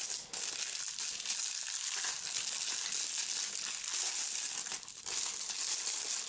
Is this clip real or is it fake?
real